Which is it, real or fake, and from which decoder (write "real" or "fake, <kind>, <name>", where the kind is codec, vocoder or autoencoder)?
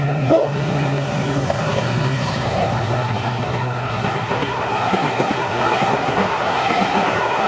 fake, codec, SNAC